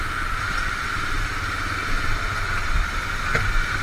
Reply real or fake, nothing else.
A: real